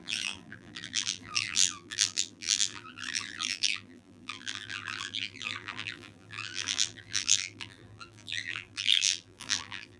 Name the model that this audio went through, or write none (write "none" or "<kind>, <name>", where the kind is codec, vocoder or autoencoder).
vocoder, BigVGAN v2